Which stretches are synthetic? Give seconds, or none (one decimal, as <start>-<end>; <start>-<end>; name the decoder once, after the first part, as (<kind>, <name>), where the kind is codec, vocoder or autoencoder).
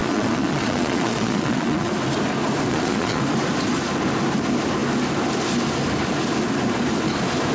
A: 0.0-1.9 (vocoder, Vocos); 2.7-3.2